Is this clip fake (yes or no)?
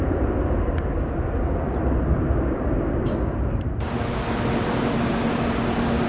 no